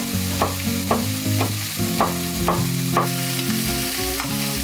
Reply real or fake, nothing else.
real